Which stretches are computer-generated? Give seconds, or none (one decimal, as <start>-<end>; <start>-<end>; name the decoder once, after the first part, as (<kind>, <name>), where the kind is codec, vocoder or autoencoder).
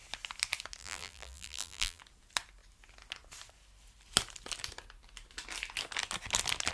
0.8-2.0 (vocoder, BigVGAN v2)